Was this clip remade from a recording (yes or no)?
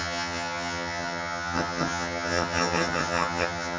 yes